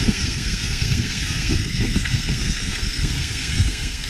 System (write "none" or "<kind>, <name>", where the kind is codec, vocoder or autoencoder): codec, SNAC